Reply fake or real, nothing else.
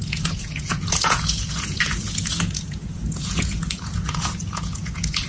fake